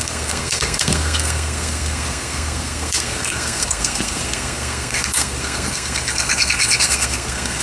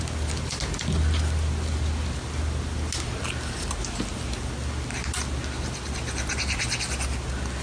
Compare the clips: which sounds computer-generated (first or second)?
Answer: first